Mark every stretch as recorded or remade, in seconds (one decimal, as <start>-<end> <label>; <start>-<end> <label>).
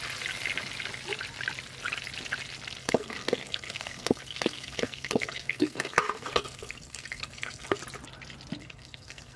0.0-2.8 recorded; 2.8-7.8 remade; 7.8-8.6 recorded; 8.6-9.4 remade